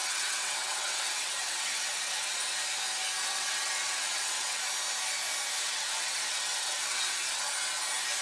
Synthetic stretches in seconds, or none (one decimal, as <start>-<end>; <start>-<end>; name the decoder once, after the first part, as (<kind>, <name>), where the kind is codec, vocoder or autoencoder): 0.0-2.4 (vocoder, WaveNeXt); 3.2-4.6; 5.6-7.4